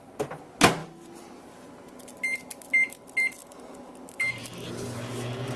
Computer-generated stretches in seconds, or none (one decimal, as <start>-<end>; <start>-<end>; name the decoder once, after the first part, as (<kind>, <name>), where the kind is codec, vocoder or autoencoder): 0.8-2.0 (vocoder, BigVGAN v2)